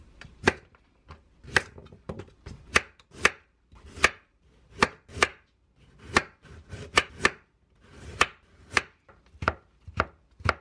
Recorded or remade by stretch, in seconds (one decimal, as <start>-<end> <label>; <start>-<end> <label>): 0.0-1.8 remade; 1.8-2.3 recorded; 2.3-5.3 remade; 5.3-8.6 recorded; 8.6-10.6 remade